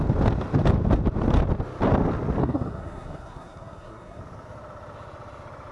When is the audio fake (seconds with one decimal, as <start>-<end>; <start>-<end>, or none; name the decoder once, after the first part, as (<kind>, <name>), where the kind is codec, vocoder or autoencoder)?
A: 2.4-4.2 (codec, SNAC)